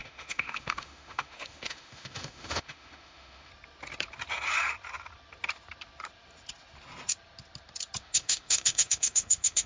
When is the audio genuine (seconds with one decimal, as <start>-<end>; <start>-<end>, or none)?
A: 3.5-8.0